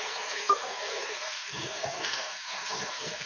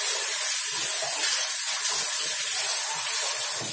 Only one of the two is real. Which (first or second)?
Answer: second